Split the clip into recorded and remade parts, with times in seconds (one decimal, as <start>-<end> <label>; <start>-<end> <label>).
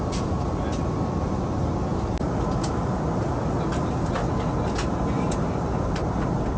0.0-6.6 recorded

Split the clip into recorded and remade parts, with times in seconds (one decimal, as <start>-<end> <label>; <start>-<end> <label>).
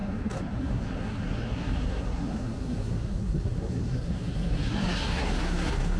0.0-6.0 remade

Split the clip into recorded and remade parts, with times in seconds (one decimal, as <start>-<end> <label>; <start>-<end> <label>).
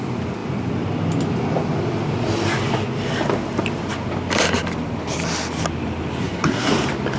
0.0-6.2 recorded; 6.2-6.7 remade; 6.7-7.2 recorded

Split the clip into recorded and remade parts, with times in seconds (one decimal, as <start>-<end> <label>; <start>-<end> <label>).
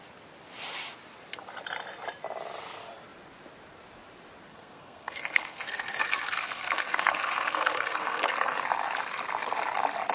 0.0-4.5 recorded; 4.5-8.3 remade; 8.3-10.1 recorded